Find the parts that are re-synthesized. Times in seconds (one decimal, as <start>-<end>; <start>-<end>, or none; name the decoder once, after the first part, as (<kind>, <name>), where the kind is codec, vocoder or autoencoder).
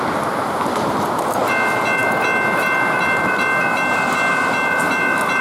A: none